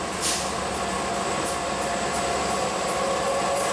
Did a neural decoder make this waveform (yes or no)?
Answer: no